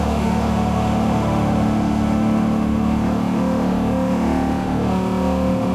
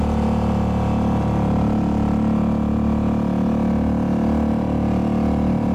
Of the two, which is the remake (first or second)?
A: first